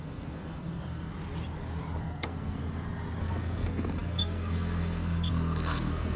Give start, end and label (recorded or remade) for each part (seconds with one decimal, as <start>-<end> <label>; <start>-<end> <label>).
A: 0.0-1.1 remade; 1.1-2.0 recorded; 2.0-2.6 remade; 2.6-3.2 recorded; 3.2-6.2 remade

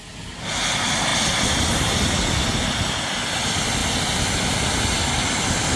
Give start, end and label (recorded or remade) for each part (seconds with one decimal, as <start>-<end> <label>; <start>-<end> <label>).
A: 0.0-5.8 recorded